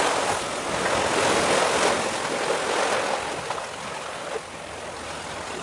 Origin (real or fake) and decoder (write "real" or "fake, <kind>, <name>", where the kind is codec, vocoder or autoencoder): real